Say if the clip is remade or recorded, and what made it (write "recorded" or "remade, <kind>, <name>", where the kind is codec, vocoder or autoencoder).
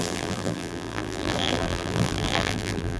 remade, vocoder, BigVGAN v2